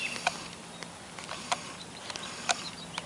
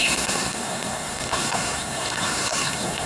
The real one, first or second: first